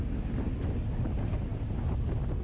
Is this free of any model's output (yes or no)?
yes